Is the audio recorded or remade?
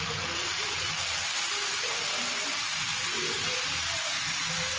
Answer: recorded